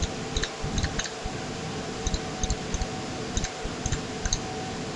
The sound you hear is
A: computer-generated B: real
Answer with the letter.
B